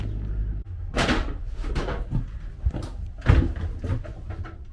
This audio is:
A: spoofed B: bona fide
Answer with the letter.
B